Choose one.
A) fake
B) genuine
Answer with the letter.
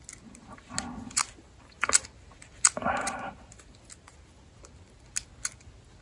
B